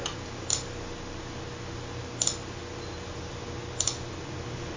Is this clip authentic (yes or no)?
yes